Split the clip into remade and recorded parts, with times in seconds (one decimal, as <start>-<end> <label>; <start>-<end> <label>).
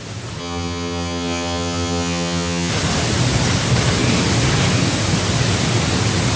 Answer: 0.0-0.4 recorded; 0.4-2.7 remade; 2.7-6.4 recorded